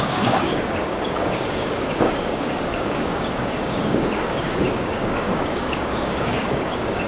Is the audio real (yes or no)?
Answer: no